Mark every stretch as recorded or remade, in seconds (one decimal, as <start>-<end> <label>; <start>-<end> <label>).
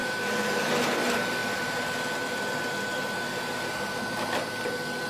0.0-0.5 remade; 0.5-1.4 recorded; 1.4-4.5 remade; 4.5-5.1 recorded